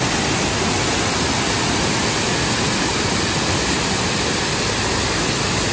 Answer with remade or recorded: recorded